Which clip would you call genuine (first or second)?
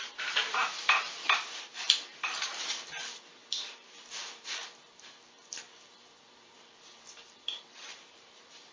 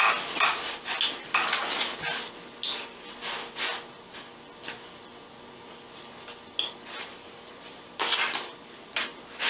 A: second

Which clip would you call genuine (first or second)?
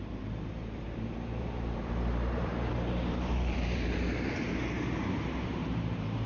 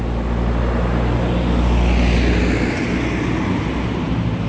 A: second